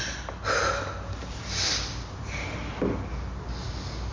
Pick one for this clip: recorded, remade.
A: recorded